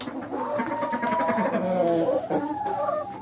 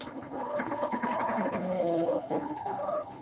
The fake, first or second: second